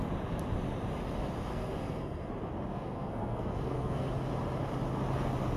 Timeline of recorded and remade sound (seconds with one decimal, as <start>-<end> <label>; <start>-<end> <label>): 0.0-1.5 recorded; 1.5-2.3 remade; 2.3-2.7 recorded; 2.7-4.1 remade; 4.1-5.6 recorded